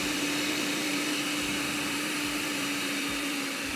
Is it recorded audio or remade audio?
remade